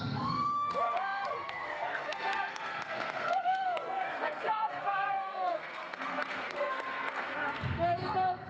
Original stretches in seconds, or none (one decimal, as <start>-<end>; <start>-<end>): none